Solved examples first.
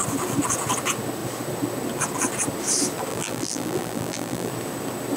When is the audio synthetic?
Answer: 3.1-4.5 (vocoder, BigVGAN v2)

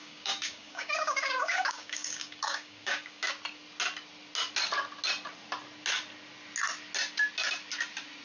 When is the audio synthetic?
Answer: 0.0-3.3 (codec, DAC)

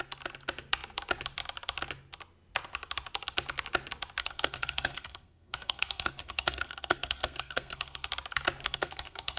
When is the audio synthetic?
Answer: 4.2-8.1 (codec, SNAC); 8.6-9.4

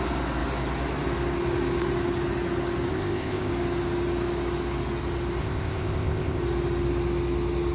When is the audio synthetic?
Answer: 2.9-3.5 (codec, ZipCodec); 5.4-6.4

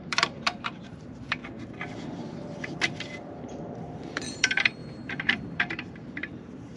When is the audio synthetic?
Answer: 0.0-1.4 (vocoder, BigVGAN v2); 1.9-6.8

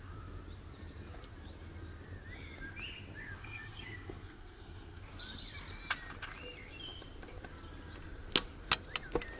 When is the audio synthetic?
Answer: 3.4-5.0 (codec, SNAC)